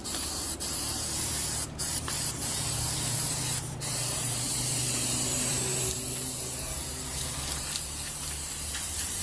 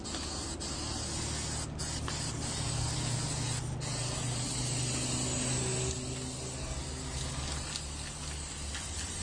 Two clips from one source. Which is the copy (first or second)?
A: first